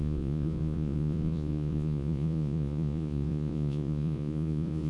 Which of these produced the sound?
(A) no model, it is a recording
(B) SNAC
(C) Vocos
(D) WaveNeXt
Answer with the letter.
C